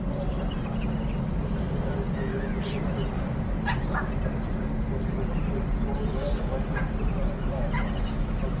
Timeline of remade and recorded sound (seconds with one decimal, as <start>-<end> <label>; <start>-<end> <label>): 0.0-8.6 recorded